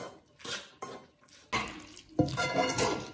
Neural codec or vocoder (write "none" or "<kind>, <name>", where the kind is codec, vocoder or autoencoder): none